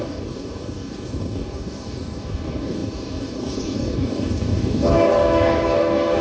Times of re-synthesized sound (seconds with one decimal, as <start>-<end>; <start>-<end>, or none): 0.0-6.2

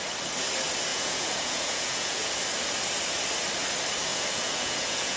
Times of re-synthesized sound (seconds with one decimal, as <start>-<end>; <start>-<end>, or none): 0.9-2.3; 4.1-5.2

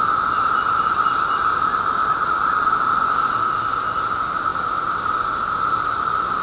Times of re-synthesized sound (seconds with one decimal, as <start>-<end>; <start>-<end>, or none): 2.0-2.7

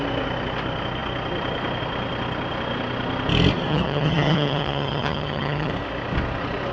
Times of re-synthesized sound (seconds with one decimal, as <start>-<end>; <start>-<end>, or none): 3.7-5.7

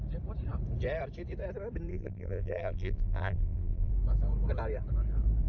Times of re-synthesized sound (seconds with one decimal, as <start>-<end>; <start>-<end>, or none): 1.9-3.9

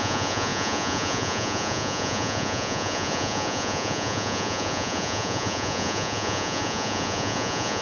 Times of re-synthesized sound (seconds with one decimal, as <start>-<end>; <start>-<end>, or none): 0.0-7.8